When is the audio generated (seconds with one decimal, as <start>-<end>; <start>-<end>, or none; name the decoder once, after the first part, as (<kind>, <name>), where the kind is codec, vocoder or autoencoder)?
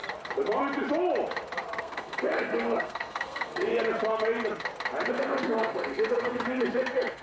1.8-3.7 (codec, SNAC); 5.1-7.2